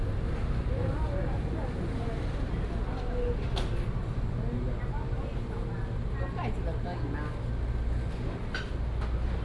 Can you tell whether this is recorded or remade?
recorded